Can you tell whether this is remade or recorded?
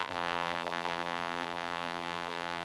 remade